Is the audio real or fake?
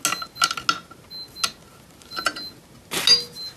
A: real